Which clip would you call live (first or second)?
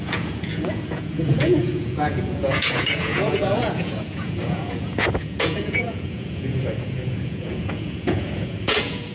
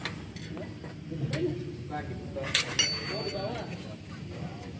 second